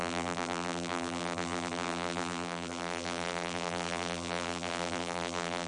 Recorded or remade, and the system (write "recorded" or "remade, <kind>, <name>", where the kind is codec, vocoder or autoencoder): remade, vocoder, BigVGAN v2